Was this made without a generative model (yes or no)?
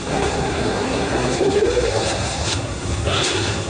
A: no